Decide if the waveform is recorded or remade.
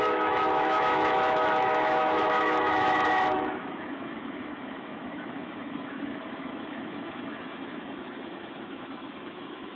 remade